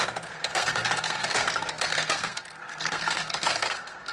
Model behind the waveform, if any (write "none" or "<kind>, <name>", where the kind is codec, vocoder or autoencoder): codec, SNAC